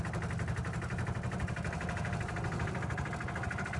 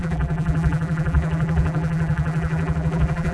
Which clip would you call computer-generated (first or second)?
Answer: second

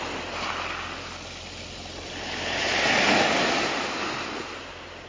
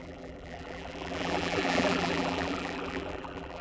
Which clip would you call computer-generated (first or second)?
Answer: second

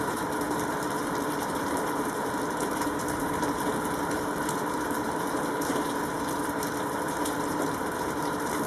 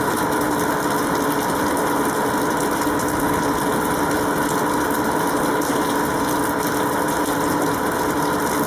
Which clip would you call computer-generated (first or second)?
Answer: first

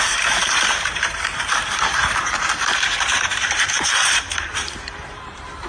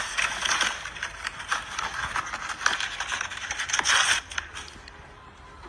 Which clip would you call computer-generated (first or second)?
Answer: first